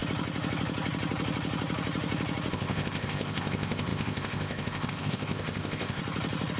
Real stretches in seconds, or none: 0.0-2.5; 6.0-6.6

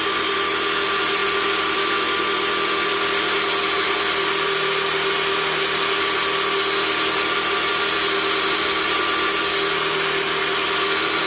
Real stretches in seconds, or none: 0.0-11.3